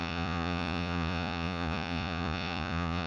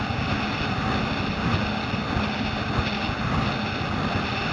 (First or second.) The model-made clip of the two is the first